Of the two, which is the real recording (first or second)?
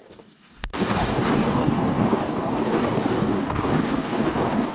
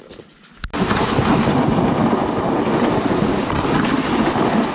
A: second